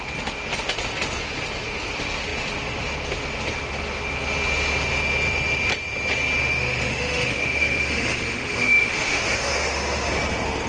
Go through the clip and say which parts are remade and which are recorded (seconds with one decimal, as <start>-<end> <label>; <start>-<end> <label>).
0.0-6.4 recorded; 6.4-10.1 remade; 10.1-10.7 recorded